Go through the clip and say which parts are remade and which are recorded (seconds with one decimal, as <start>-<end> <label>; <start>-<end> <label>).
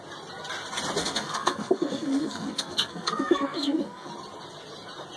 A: 0.0-1.0 recorded; 1.0-4.1 remade; 4.1-5.2 recorded